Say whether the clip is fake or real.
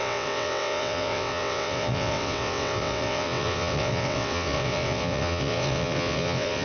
fake